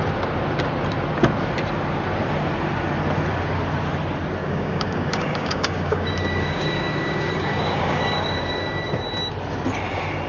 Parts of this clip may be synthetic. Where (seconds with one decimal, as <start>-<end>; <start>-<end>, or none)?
4.4-9.0